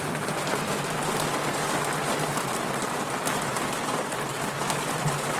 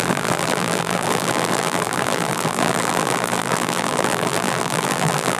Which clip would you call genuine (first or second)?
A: first